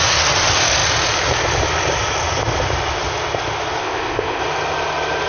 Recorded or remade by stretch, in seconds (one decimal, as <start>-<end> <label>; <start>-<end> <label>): 0.0-3.8 recorded; 3.8-4.4 remade; 4.4-5.3 recorded